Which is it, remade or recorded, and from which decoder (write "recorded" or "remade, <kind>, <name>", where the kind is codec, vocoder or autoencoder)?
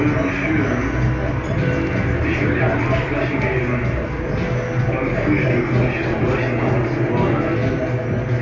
recorded